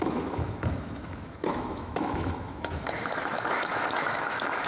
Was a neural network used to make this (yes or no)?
yes